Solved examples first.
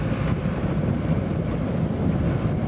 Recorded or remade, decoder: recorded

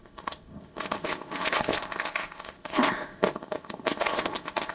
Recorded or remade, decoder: remade, codec, ZipCodec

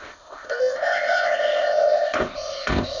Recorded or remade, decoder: remade, codec, ZipCodec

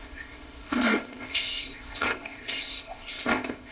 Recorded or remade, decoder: remade, codec, ZipCodec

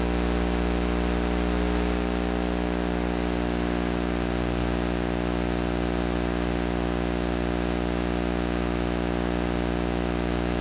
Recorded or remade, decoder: recorded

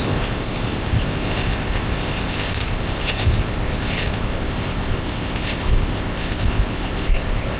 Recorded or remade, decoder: remade, codec, ZipCodec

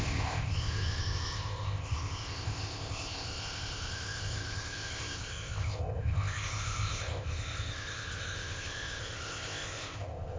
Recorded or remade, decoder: remade, codec, ZipCodec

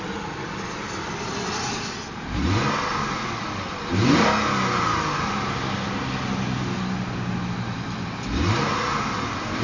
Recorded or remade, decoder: recorded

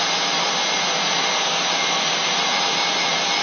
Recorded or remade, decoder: recorded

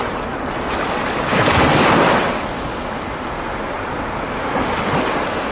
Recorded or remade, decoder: recorded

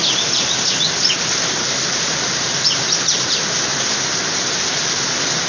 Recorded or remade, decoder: recorded